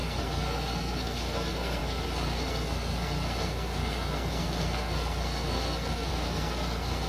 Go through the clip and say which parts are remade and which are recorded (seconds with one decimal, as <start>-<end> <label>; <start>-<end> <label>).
0.0-7.1 remade